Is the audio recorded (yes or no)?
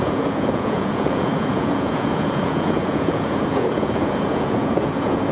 no